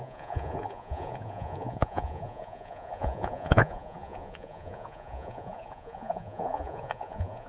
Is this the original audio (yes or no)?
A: no